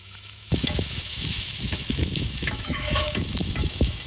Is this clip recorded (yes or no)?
no